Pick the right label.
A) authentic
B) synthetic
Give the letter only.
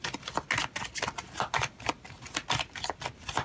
A